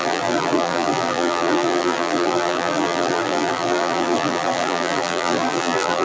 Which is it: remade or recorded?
remade